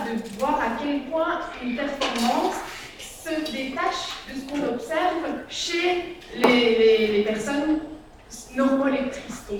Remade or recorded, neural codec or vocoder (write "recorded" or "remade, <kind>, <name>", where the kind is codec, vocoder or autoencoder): recorded